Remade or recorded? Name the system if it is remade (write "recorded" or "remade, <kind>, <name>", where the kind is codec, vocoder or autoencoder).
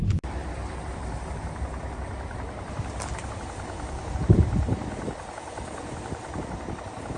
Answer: recorded